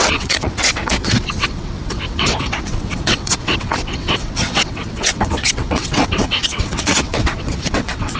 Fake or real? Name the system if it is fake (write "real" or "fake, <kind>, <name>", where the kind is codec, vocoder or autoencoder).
fake, vocoder, WaveNeXt